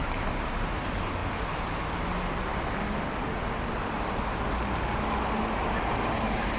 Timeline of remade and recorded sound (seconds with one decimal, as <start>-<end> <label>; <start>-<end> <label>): 0.0-6.6 recorded